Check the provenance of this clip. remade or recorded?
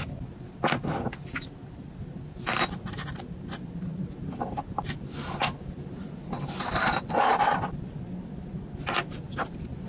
recorded